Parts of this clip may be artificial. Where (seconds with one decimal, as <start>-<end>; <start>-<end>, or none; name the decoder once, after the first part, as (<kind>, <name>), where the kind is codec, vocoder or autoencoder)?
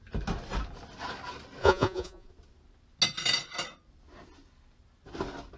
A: 1.6-2.3 (vocoder, Vocos)